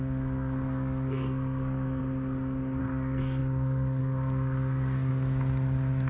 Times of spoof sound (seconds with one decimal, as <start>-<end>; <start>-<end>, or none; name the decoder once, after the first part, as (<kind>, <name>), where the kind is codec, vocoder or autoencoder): 0.0-2.0 (codec, SNAC); 2.8-5.1